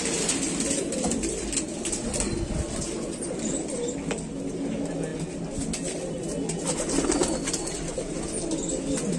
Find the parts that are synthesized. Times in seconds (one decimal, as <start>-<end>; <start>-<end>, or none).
none